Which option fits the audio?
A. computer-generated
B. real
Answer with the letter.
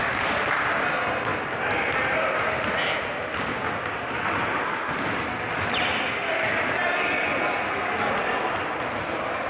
B